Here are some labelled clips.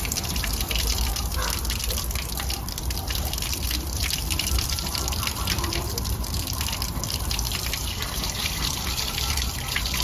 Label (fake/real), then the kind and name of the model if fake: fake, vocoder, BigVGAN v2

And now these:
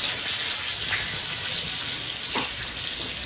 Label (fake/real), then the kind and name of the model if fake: real